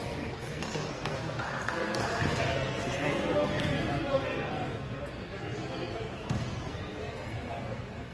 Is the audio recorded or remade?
remade